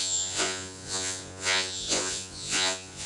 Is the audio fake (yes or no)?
yes